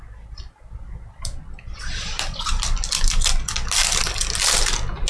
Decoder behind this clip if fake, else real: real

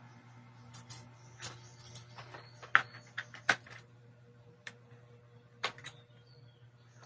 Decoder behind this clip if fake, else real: fake, vocoder, BigVGAN v2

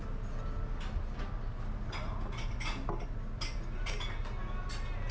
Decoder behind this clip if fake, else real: real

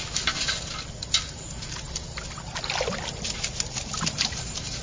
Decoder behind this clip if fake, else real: real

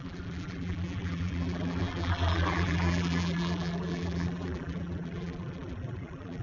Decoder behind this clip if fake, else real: fake, vocoder, BigVGAN v2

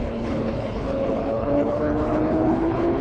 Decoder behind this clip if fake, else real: fake, codec, HILCodec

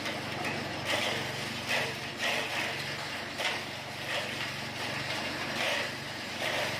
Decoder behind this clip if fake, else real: fake, vocoder, BigVGAN v2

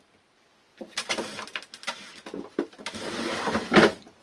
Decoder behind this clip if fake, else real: real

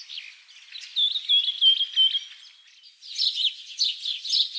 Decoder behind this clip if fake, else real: real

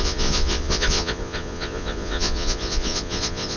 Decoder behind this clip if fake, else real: fake, vocoder, Vocos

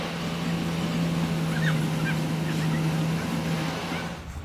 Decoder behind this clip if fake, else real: real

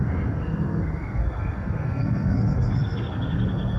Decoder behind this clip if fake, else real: fake, codec, SNAC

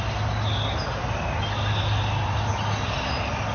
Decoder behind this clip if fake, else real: real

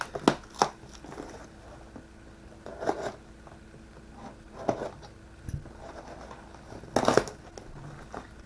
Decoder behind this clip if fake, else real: real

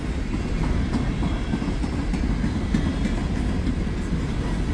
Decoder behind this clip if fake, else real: real